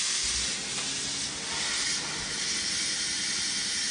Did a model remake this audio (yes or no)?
no